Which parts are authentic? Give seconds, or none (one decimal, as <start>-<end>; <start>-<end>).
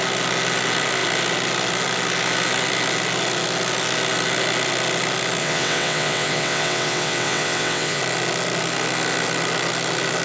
0.0-5.4; 8.0-10.2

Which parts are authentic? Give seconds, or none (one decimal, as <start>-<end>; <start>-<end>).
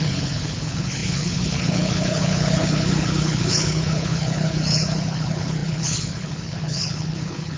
none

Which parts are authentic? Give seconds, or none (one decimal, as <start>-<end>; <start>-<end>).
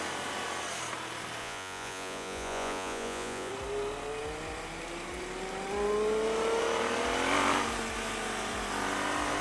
0.0-1.4; 3.5-9.4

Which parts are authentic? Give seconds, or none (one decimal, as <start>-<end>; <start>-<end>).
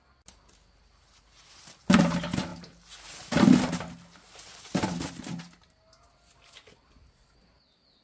0.0-8.0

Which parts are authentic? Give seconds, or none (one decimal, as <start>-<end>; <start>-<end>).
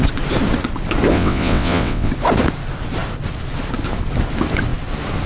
0.0-1.1; 2.1-5.3